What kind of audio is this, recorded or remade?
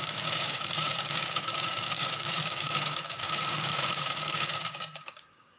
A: remade